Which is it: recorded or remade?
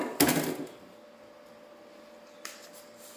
recorded